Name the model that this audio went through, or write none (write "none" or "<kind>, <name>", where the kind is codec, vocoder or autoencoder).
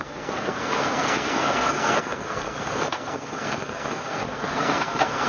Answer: codec, SNAC